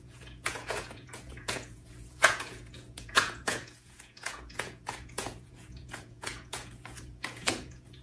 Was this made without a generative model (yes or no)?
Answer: no